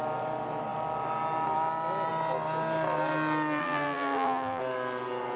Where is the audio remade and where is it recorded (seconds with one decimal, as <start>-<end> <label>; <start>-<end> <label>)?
0.0-3.6 recorded; 3.6-4.6 remade; 4.6-5.4 recorded